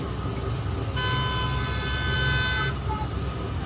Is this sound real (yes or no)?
yes